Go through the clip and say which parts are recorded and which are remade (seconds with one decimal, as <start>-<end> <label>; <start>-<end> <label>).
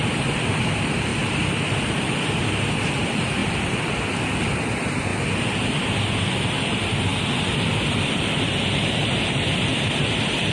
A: 0.0-1.1 remade; 1.1-2.0 recorded; 2.0-5.1 remade; 5.1-5.7 recorded; 5.7-7.1 remade; 7.1-7.9 recorded; 7.9-10.5 remade